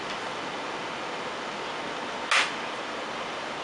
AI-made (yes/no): no